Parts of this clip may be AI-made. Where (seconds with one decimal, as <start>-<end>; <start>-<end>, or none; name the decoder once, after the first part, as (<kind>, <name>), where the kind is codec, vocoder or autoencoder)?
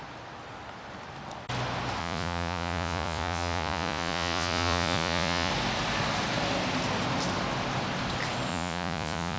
2.0-5.5 (vocoder, Vocos); 8.5-9.4